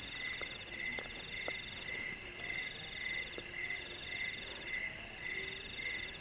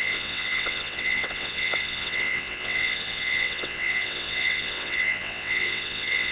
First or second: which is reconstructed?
second